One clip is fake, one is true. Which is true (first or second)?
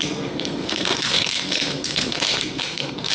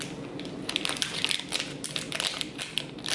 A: second